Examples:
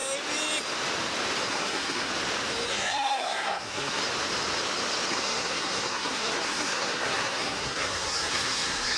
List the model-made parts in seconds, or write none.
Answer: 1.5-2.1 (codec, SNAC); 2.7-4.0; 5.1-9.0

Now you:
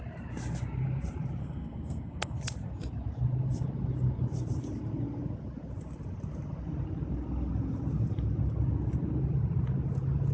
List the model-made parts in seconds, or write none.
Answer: 1.4-2.4 (codec, SNAC)

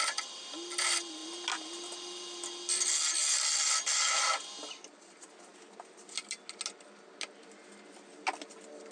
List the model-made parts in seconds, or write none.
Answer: none

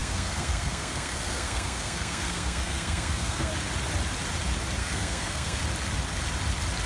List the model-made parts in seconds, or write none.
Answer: 0.0-3.5 (codec, SNAC); 4.8-5.6

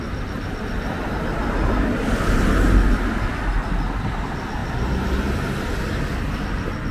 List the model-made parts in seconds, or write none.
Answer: none

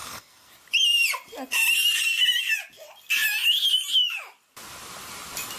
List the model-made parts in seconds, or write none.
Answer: 0.0-0.5 (codec, SNAC)

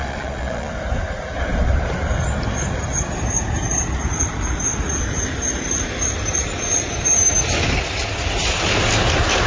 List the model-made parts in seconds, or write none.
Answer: 0.0-0.7 (vocoder, Vocos)